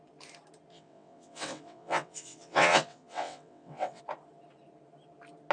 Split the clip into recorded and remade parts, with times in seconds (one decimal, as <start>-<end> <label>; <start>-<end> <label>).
0.0-0.7 recorded; 0.7-4.0 remade; 4.0-5.5 recorded